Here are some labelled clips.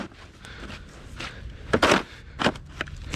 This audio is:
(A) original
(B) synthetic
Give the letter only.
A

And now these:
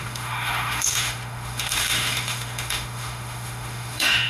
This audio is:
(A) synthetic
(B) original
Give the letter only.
A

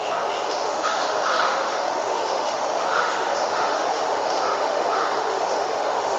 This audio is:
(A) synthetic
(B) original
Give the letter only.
A